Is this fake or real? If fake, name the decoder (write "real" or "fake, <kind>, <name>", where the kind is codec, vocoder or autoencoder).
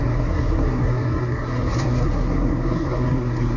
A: fake, codec, SNAC